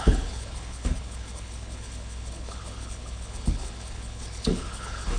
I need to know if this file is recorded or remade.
remade